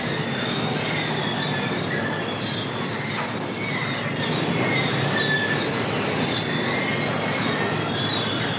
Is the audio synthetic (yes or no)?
no